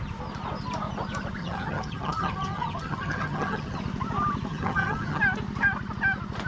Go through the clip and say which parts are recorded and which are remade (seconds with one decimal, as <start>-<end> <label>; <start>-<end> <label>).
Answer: 0.0-1.4 recorded; 1.4-3.8 remade; 3.8-4.5 recorded; 4.5-5.2 remade; 5.2-6.5 recorded